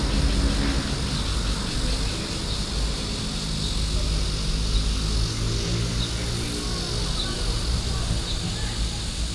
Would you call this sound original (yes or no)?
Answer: yes